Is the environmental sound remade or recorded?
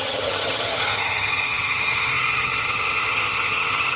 remade